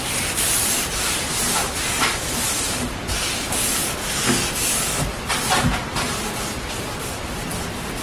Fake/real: real